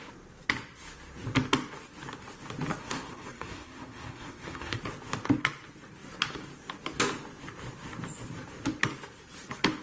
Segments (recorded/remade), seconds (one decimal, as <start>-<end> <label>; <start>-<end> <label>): 0.0-2.8 recorded; 2.8-4.8 remade; 4.8-9.8 recorded